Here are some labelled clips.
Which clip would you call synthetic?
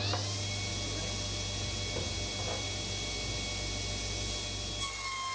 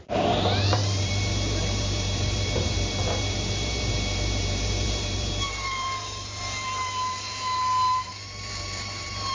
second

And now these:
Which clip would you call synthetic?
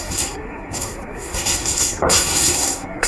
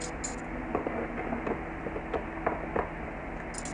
first